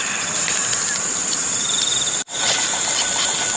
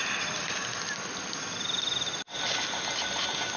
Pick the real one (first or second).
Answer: second